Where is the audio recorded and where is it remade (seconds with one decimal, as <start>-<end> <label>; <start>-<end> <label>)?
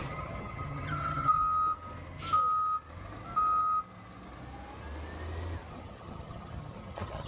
0.0-1.4 remade; 1.4-5.7 recorded; 5.7-7.3 remade